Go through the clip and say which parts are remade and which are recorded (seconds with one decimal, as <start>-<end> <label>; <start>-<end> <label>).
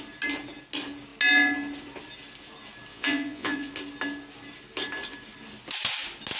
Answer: 0.0-2.9 recorded; 2.9-3.7 remade; 3.7-6.4 recorded